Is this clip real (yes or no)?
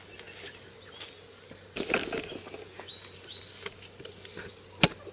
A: yes